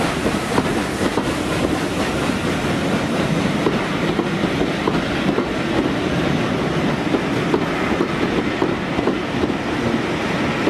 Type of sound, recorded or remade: recorded